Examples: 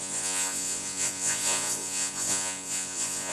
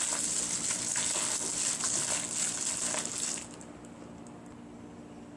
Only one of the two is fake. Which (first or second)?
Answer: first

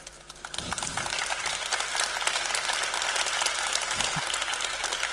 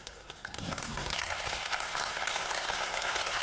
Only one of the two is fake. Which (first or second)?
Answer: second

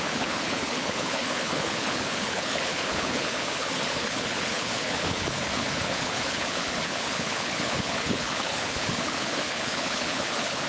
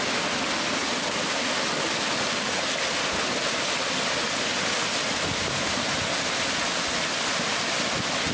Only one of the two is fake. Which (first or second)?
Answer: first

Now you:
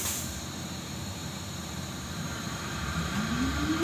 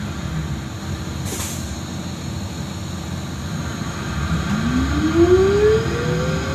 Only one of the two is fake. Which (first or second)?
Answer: first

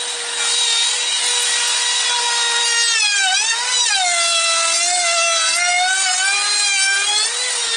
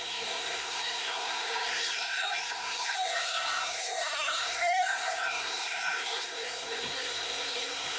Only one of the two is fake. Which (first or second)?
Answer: second